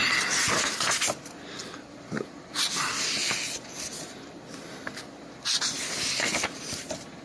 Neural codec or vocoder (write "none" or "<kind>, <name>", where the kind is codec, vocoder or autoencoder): none